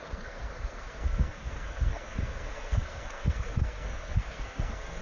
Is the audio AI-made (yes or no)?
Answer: yes